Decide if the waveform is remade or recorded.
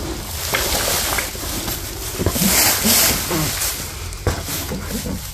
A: recorded